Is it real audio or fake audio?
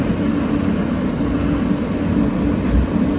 real